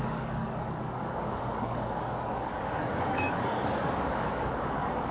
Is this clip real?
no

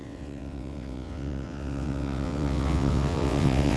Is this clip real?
no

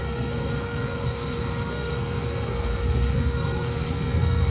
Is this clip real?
no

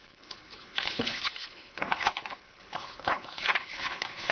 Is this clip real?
no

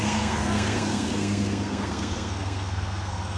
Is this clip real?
no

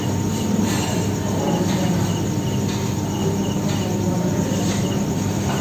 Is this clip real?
yes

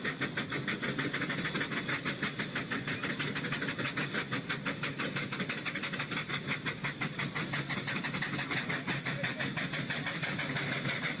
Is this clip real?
yes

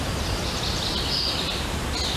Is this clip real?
yes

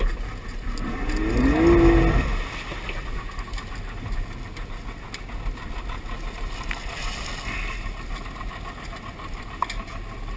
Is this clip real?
yes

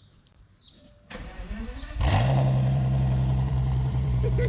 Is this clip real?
no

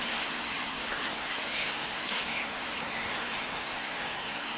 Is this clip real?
no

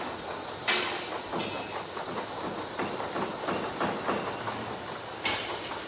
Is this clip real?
yes